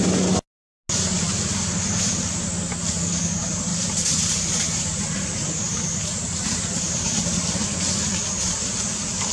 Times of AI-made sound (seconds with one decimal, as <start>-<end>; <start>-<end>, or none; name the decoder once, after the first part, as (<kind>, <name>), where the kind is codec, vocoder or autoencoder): 3.7-7.2 (vocoder, BigVGAN v2)